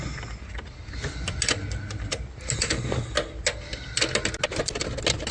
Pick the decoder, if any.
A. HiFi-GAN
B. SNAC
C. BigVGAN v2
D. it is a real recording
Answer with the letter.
D